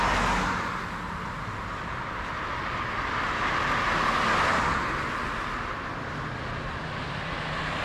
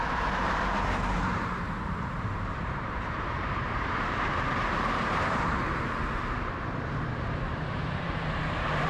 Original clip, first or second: first